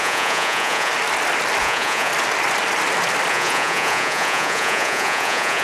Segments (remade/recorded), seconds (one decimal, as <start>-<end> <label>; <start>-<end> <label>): 0.0-0.9 remade; 0.9-1.6 recorded; 1.6-2.1 remade; 2.1-3.3 recorded; 3.3-5.6 remade